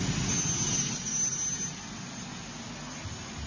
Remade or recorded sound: recorded